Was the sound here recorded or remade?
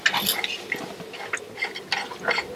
recorded